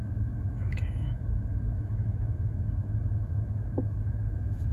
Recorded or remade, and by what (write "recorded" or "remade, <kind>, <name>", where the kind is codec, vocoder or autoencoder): remade, autoencoder, DAC-VAE